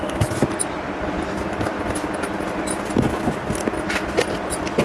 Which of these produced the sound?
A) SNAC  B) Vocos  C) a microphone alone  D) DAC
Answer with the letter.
C